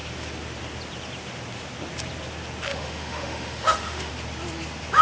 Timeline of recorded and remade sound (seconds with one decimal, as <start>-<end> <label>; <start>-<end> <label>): 0.0-2.7 recorded; 2.7-4.1 remade; 4.1-5.0 recorded